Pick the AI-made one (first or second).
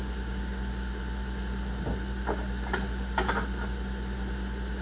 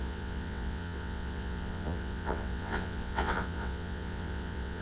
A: second